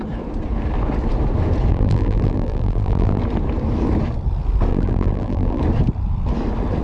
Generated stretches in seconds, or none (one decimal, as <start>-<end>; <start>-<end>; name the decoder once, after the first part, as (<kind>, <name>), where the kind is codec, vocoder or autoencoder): 1.7-3.2 (vocoder, BigVGAN v2); 4.7-5.6